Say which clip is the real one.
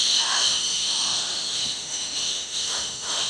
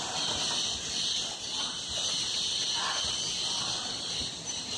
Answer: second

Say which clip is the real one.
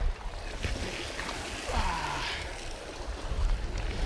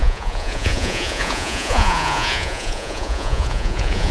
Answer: first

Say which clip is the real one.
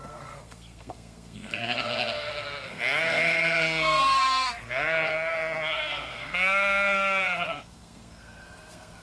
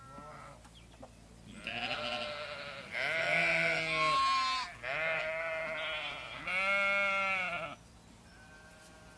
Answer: second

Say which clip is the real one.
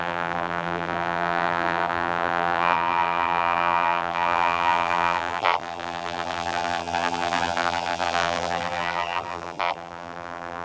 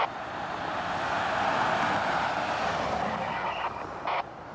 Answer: second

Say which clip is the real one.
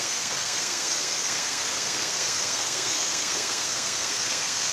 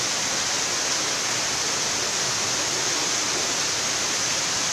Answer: second